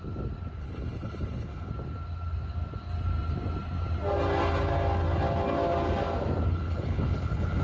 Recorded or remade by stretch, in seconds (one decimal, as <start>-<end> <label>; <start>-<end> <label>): 0.0-0.6 recorded; 0.6-1.7 remade; 1.7-6.5 recorded; 6.5-7.6 remade